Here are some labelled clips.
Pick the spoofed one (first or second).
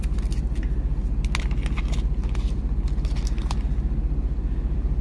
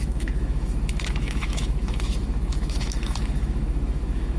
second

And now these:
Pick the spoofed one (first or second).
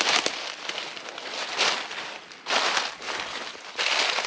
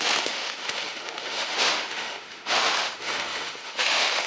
second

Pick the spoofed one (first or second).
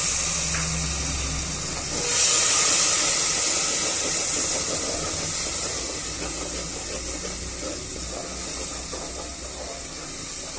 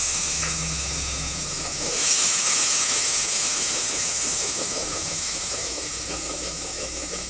second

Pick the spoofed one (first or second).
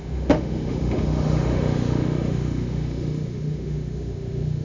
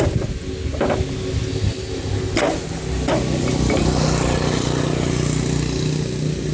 first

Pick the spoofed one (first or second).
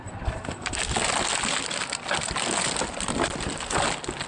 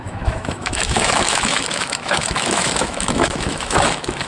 second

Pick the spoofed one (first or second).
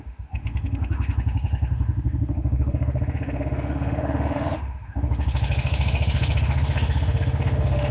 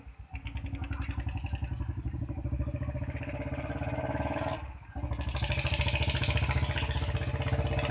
first